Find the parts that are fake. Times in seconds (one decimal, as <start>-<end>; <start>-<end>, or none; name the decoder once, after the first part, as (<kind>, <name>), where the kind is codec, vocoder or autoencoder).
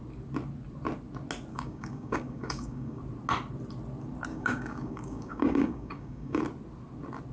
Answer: 1.5-3.0 (codec, DAC); 4.3-6.4